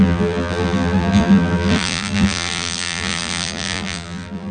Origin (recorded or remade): remade